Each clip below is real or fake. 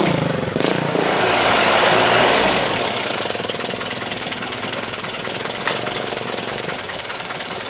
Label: fake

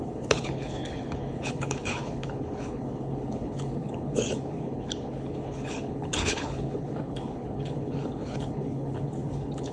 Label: fake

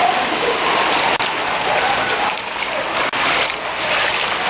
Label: real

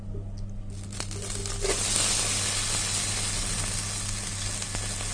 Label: real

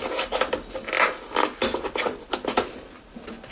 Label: real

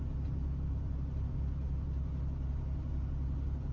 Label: real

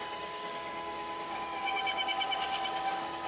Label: fake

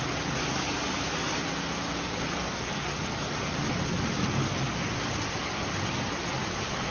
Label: real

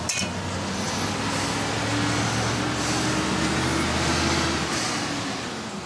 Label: real